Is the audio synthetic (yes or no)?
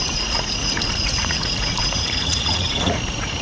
yes